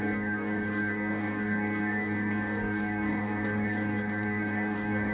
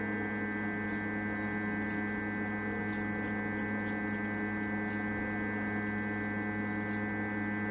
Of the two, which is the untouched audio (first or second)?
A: second